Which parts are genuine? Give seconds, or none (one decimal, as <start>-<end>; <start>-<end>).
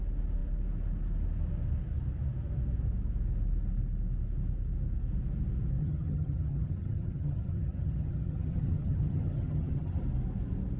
0.0-5.8; 10.0-10.8